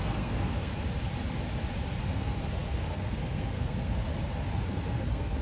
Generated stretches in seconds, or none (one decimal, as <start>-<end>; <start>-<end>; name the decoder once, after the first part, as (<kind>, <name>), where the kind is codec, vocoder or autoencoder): 0.0-0.7 (codec, SNAC); 2.0-4.1; 4.7-5.4